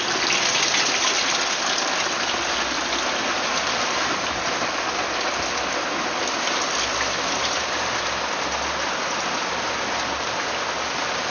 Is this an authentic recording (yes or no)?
yes